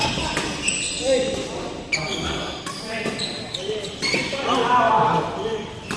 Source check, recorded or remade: recorded